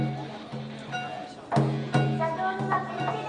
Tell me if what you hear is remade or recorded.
recorded